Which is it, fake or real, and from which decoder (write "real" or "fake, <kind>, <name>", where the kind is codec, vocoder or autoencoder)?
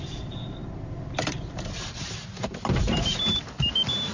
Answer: fake, vocoder, BigVGAN v2